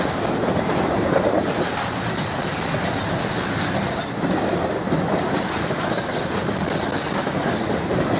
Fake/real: real